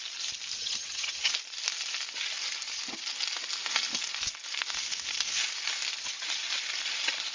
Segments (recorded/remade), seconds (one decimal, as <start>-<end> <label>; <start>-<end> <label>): 0.0-0.6 recorded; 0.6-1.3 remade; 1.3-7.3 recorded